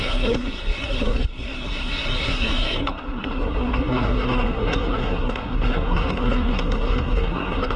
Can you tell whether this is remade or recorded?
remade